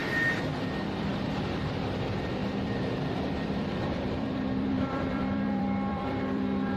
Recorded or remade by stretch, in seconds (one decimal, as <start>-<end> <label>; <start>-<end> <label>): 0.0-6.8 remade